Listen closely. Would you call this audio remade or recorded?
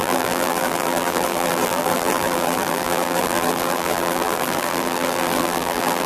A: remade